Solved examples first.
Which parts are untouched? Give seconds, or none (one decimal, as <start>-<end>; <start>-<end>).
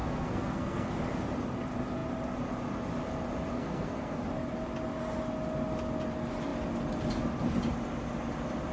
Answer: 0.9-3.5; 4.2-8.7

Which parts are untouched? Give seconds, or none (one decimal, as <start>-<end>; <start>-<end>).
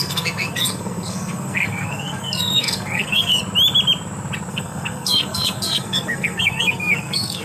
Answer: 3.4-4.5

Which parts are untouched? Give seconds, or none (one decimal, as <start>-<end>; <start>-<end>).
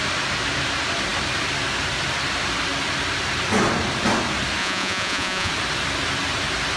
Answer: 0.0-4.6; 5.5-6.8